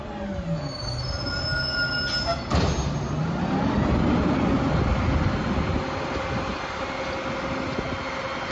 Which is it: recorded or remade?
recorded